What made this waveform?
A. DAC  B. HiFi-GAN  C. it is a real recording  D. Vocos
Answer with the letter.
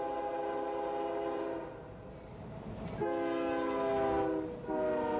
C